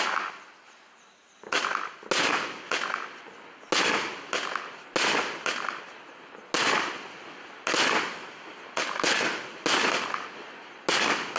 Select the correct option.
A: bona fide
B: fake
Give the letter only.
A